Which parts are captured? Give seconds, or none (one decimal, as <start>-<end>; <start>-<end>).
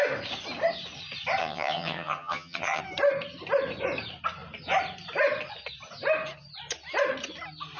0.0-1.4; 2.8-7.8